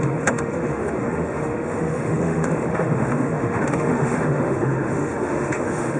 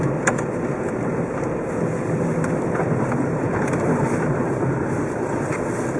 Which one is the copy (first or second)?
first